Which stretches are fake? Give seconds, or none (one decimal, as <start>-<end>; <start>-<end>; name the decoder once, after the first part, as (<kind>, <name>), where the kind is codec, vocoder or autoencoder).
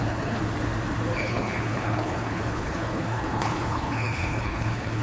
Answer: 0.0-0.4 (codec, HILCodec); 1.2-5.0